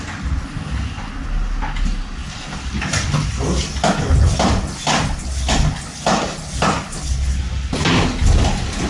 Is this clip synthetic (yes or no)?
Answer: no